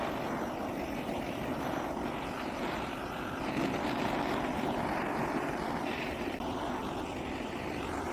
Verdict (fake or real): fake